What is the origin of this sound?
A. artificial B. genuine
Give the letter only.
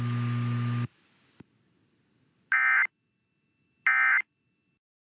B